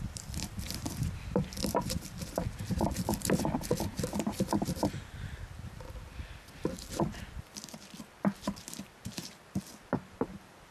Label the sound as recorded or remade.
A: remade